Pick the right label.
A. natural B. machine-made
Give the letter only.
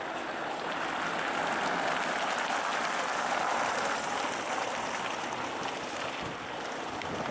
A